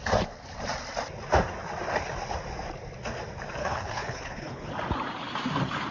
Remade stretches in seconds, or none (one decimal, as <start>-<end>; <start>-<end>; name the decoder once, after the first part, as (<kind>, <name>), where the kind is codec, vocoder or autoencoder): 3.6-4.7 (codec, HILCodec)